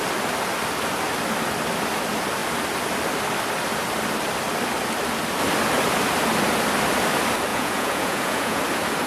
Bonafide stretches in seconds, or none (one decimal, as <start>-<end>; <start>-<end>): 0.0-7.5; 8.6-9.1